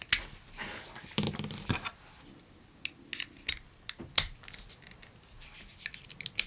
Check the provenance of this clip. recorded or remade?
recorded